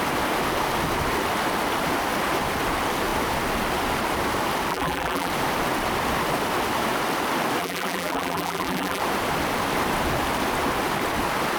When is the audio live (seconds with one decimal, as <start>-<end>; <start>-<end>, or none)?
0.0-4.7; 5.3-7.6; 9.0-11.6